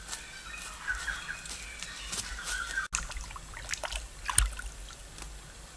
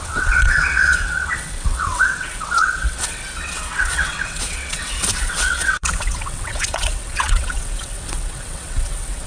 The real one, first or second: first